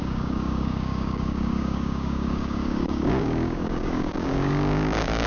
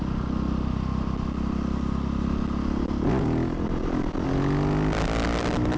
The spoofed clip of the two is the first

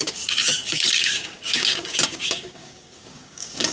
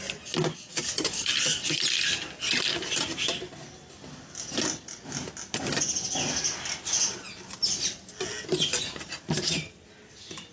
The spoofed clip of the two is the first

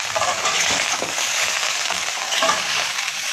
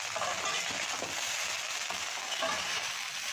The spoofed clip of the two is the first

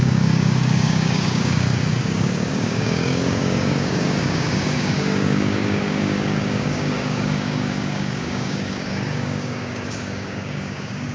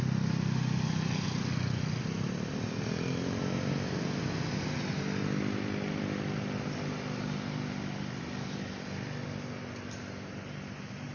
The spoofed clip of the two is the first